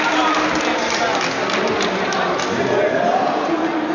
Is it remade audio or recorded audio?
recorded